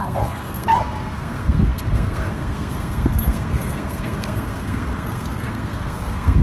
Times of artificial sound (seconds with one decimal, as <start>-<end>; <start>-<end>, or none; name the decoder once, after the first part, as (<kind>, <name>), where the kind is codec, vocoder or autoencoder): 0.0-6.4 (codec, SNAC)